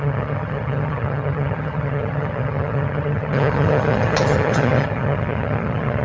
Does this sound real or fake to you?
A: fake